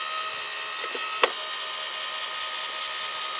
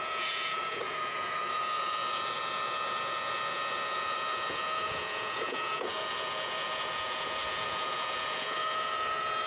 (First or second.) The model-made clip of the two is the second